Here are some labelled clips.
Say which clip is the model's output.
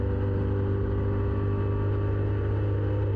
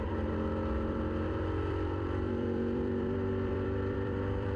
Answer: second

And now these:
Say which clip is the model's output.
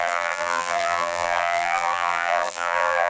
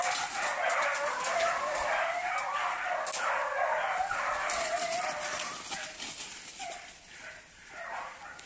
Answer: first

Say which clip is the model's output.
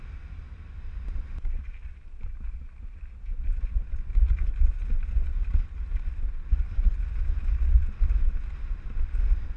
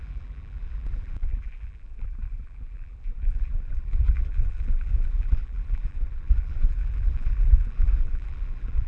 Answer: second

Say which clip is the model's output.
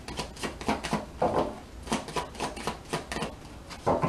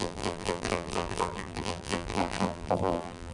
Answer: second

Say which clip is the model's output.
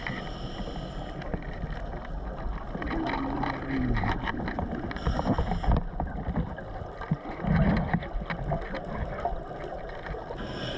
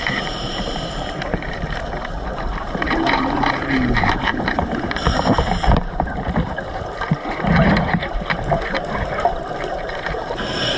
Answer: second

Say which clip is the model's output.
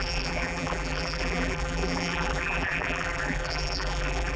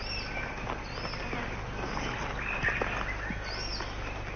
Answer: first